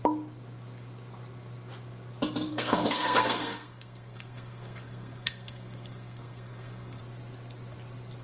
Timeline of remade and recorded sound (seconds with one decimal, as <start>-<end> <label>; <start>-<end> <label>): 0.0-2.5 recorded; 2.5-7.0 remade; 7.0-8.2 recorded